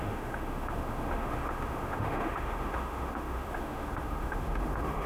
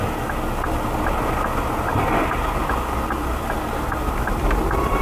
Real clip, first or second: second